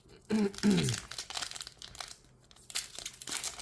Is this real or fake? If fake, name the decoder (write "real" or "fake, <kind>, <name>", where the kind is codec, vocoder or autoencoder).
real